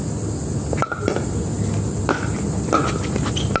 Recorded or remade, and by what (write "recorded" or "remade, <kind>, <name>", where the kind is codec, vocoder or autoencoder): recorded